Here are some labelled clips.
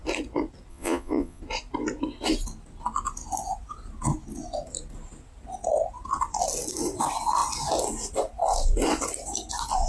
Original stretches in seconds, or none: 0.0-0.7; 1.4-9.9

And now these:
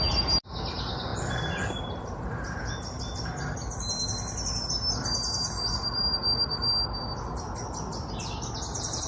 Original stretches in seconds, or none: 0.0-9.1

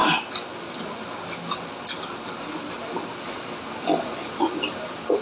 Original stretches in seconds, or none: 0.0-5.2

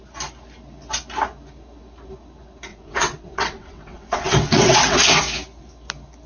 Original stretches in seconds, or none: 0.0-2.7; 5.2-6.3

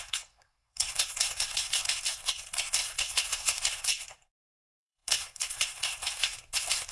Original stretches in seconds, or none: none

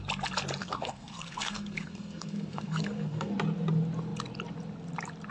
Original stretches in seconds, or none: 0.0-0.6; 3.3-5.3

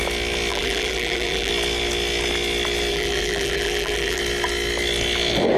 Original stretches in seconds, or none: 0.0-0.5; 1.5-2.9; 4.2-5.6

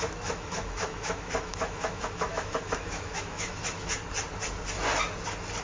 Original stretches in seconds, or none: 4.0-5.6